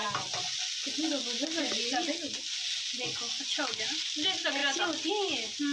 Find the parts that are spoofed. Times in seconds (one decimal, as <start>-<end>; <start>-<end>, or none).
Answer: none